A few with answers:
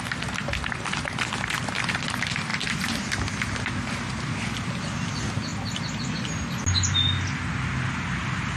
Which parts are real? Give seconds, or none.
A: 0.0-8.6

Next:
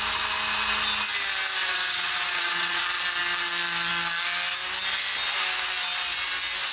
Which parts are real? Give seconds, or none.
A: 0.0-1.6; 2.8-6.7